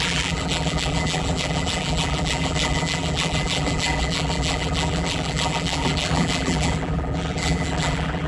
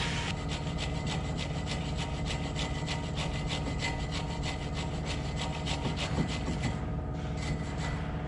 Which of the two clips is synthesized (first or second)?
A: first